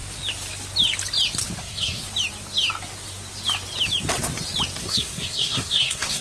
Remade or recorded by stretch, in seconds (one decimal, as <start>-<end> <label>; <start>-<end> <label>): 0.0-1.6 recorded; 1.6-2.0 remade; 2.0-4.8 recorded; 4.8-6.2 remade